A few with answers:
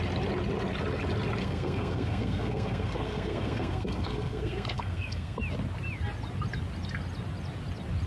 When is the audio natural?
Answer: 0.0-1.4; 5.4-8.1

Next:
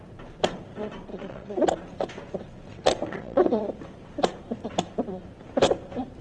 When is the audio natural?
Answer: 0.0-1.1; 1.7-2.7; 3.6-6.2

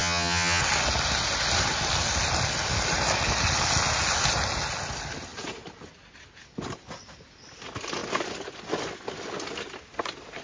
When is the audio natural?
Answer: 0.6-10.4

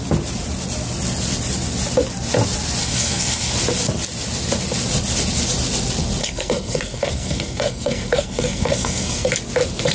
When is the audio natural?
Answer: 0.0-2.8; 3.5-6.2; 9.3-9.9